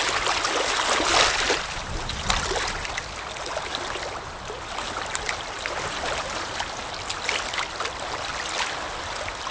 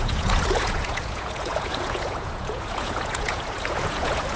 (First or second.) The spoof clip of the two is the second